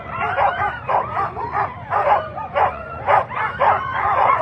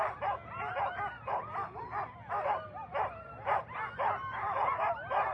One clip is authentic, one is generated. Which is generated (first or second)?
first